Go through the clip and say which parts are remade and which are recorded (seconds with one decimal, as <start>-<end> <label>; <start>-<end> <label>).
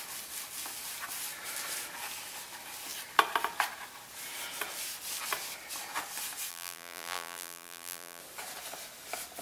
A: 0.0-6.5 recorded; 6.5-8.2 remade; 8.2-9.4 recorded